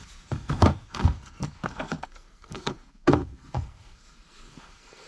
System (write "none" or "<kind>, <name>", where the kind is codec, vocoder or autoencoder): codec, SNAC